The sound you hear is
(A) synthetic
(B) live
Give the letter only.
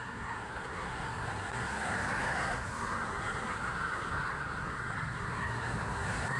A